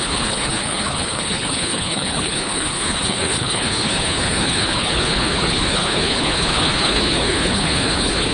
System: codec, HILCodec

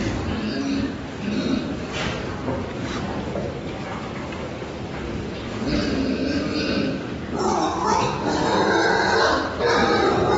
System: none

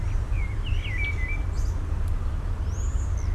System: none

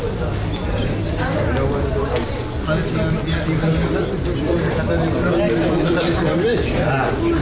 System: none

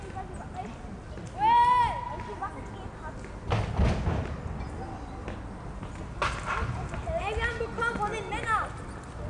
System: none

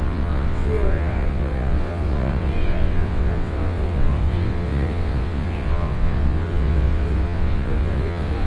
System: vocoder, WaveNeXt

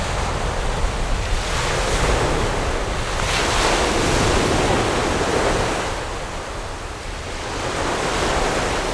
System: none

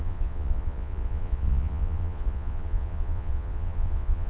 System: vocoder, Vocos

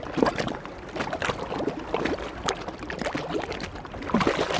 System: none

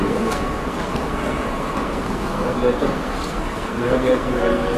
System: codec, SNAC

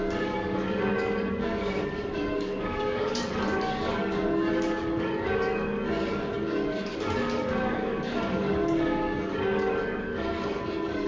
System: codec, DAC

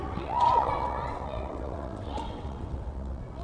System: vocoder, WaveNeXt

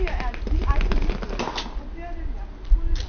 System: none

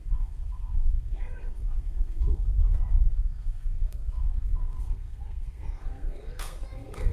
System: codec, SNAC